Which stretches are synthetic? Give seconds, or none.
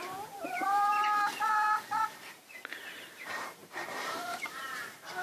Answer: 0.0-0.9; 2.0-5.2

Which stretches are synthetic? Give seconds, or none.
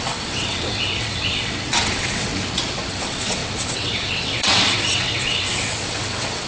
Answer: 0.0-2.3; 2.9-6.5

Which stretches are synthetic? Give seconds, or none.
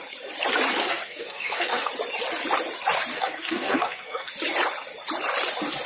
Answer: 0.8-1.9; 3.1-4.3